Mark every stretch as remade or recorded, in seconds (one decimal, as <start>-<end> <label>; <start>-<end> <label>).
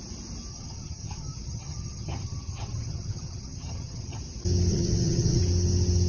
0.0-0.5 recorded; 0.5-4.2 remade; 4.2-4.7 recorded; 4.7-5.4 remade; 5.4-6.1 recorded